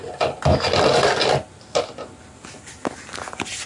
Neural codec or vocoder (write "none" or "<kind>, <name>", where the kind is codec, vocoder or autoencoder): none